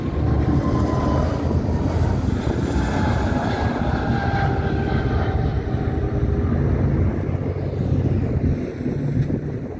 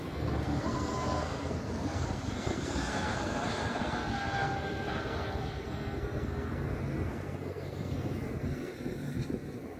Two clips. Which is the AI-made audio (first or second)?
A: second